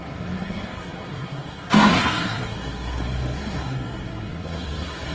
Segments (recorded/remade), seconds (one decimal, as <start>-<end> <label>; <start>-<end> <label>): 0.0-5.1 remade